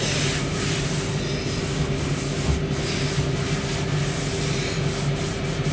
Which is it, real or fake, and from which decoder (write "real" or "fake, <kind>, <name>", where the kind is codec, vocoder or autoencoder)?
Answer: real